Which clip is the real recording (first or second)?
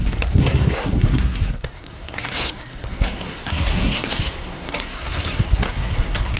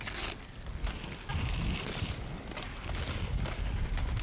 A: second